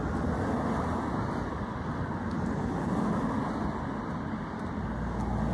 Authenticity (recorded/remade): recorded